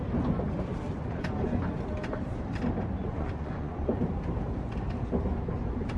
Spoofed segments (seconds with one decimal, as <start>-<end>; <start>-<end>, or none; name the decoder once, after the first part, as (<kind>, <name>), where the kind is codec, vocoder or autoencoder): 3.0-4.0 (vocoder, Vocos)